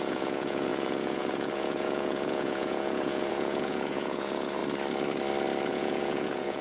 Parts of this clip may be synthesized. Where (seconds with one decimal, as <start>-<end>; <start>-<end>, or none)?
0.0-4.6; 5.7-6.6